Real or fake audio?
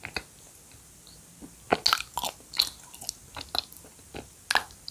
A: real